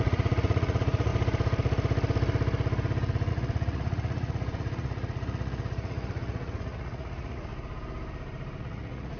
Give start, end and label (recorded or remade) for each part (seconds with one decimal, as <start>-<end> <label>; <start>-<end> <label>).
0.0-1.1 remade; 1.1-3.3 recorded; 3.3-7.5 remade; 7.5-8.6 recorded; 8.6-9.2 remade